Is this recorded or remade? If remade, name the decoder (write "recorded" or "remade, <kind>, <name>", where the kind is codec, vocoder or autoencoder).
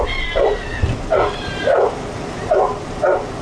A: recorded